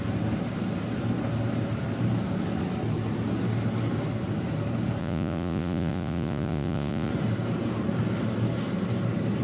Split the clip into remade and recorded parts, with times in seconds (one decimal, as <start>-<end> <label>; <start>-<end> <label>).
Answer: 0.0-5.0 recorded; 5.0-7.1 remade; 7.1-9.4 recorded